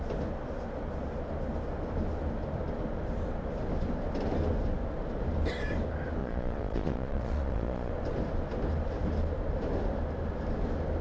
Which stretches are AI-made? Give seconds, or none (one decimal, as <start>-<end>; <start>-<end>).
6.2-7.9